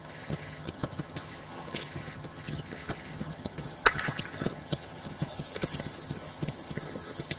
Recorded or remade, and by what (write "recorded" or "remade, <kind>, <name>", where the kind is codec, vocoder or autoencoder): remade, vocoder, HiFi-GAN